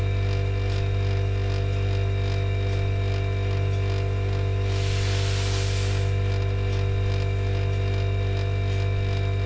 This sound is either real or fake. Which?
real